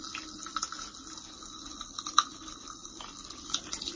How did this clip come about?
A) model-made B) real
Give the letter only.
B